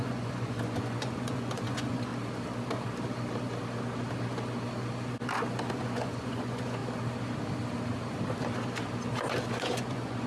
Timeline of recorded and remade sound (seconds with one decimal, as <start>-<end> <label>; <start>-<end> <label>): 0.0-2.1 remade; 2.1-5.7 recorded; 5.7-6.8 remade; 6.8-9.5 recorded; 9.5-10.3 remade